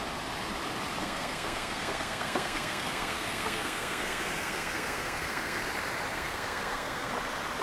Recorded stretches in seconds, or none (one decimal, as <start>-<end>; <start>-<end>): 0.0-1.0; 5.6-6.1; 7.1-7.6